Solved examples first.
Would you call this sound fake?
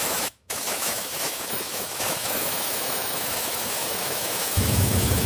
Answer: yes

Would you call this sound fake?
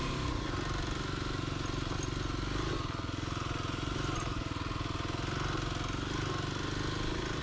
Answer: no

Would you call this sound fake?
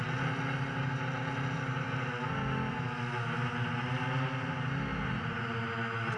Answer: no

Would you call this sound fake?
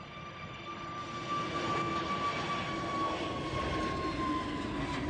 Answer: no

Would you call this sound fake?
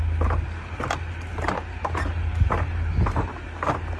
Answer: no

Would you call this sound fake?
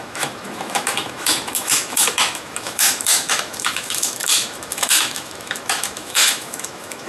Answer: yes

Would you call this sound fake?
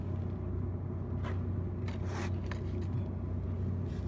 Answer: no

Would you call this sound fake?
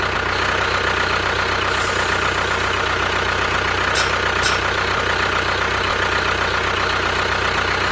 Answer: no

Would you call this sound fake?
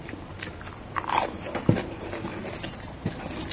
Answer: no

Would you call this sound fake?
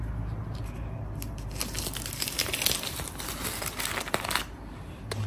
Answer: no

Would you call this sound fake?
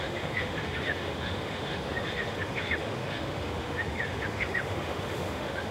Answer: yes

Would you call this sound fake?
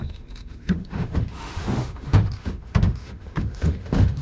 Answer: yes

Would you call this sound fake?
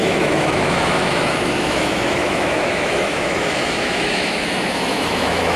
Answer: yes